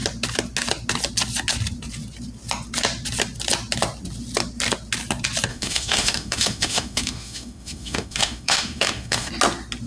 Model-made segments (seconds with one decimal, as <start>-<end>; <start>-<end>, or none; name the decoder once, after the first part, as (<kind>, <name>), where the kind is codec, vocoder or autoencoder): 5.5-9.3 (autoencoder, DAC-VAE)